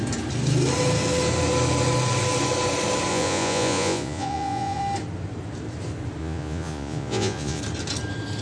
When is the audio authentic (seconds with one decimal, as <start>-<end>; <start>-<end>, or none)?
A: 0.0-3.1; 4.8-6.2; 7.6-8.4